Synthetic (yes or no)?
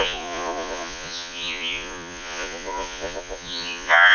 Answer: yes